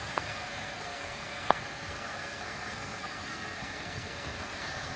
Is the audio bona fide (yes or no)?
no